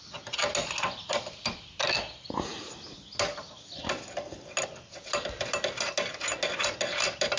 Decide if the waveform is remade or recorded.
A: recorded